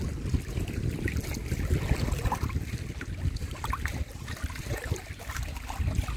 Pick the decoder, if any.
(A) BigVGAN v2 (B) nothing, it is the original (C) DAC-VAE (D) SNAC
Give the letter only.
B